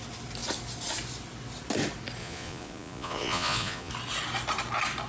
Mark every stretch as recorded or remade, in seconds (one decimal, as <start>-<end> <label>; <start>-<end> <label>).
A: 0.0-2.2 recorded; 2.2-3.9 remade; 3.9-5.1 recorded